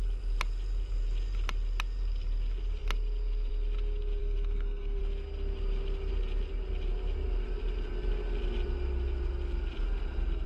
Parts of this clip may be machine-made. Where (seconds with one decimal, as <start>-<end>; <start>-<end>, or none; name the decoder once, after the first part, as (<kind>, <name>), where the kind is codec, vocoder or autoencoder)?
4.2-5.0 (codec, SNAC)